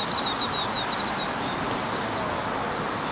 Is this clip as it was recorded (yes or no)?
yes